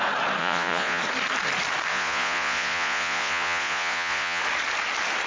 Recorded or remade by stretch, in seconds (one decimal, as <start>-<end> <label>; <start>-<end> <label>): 0.0-0.4 recorded; 0.4-1.0 remade; 1.0-1.9 recorded; 1.9-4.4 remade; 4.4-5.3 recorded